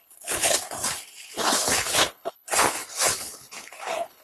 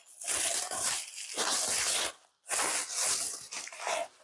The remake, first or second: first